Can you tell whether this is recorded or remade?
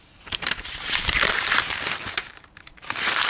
remade